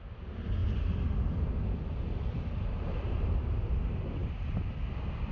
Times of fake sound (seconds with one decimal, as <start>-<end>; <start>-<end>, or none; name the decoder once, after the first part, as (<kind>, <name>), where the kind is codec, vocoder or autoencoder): none